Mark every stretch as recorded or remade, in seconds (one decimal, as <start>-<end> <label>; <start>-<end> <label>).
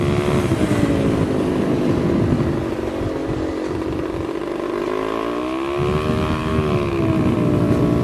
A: 0.0-6.5 recorded; 6.5-7.0 remade; 7.0-8.0 recorded